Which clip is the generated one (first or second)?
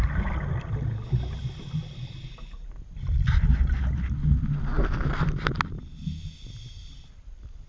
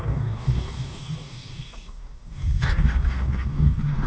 second